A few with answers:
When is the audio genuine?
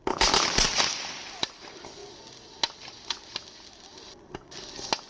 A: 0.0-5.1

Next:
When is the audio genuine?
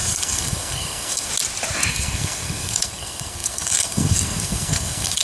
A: 1.3-1.9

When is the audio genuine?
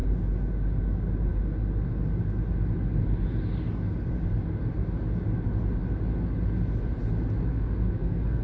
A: 0.0-7.5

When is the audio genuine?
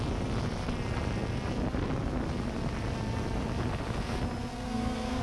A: 0.0-4.5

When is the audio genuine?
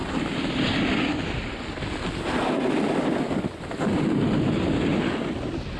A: 0.0-5.8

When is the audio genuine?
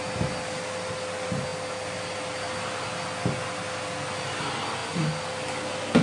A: 0.0-6.0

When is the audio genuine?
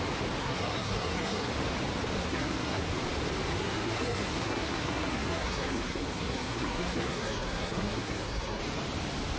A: 0.0-0.4; 1.5-2.2; 2.9-3.6; 8.6-9.4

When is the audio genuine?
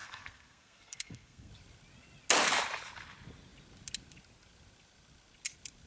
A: 1.5-5.9